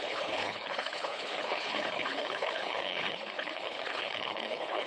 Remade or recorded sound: remade